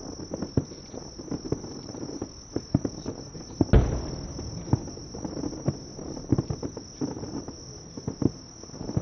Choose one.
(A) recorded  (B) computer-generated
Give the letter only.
A